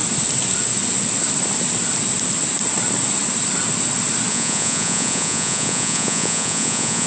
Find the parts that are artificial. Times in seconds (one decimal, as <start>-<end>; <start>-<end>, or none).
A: 4.3-7.1